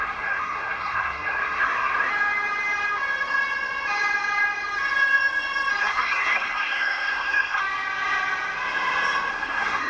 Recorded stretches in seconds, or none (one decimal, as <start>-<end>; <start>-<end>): 2.1-5.8; 7.6-9.3